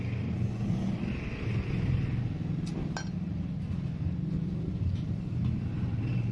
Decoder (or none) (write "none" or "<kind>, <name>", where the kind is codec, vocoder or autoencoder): none